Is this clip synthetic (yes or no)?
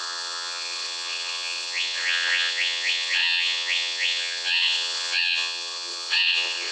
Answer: yes